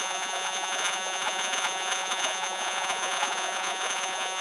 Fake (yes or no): yes